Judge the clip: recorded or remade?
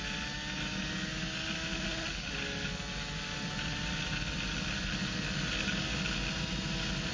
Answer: recorded